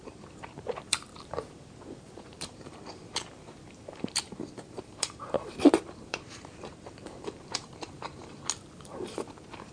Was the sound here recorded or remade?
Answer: remade